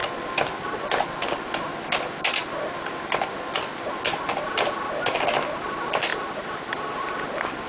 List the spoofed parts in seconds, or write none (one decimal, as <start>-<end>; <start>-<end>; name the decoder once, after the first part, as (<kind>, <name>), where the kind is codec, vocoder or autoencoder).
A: none

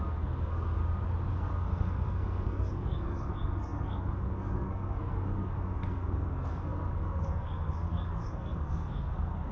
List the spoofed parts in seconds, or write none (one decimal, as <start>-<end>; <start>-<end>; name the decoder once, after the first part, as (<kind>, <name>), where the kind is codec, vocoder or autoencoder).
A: 0.0-0.8 (codec, SNAC); 1.3-9.5

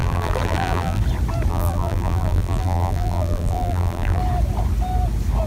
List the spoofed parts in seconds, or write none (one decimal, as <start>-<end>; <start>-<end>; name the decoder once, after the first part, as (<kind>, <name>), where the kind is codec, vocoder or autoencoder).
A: 0.0-1.0 (vocoder, BigVGAN v2); 1.5-4.2

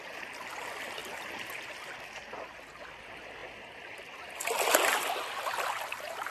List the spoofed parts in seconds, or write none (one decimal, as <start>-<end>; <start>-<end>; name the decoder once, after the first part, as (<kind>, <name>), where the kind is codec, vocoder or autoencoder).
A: none

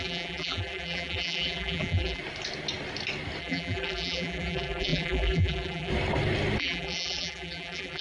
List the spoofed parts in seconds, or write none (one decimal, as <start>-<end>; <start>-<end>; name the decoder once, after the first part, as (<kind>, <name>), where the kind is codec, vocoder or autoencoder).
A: 0.0-2.2 (vocoder, BigVGAN v2); 3.4-5.9; 6.6-8.0